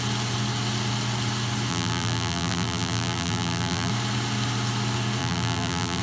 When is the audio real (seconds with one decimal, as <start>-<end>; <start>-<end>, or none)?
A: 0.0-1.7; 3.9-5.2